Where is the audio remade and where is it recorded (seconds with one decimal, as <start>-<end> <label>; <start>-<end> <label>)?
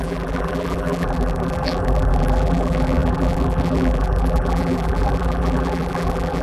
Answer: 0.0-6.4 remade